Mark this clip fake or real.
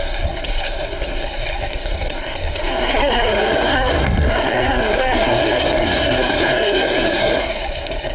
fake